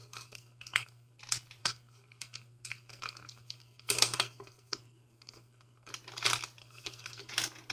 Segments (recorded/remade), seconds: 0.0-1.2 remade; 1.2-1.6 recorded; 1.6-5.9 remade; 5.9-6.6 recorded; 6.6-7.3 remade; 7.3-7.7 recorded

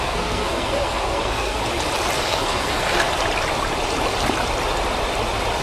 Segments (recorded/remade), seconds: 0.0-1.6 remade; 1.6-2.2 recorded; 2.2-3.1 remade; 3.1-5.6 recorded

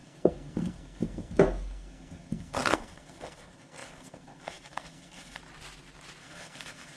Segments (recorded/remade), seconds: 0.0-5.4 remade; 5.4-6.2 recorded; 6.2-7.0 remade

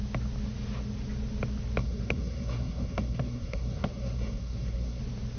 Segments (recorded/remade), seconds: 0.0-1.8 recorded; 1.8-5.0 remade; 5.0-5.4 recorded